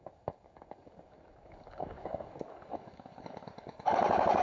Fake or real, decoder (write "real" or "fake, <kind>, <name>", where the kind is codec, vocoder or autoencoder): fake, codec, DAC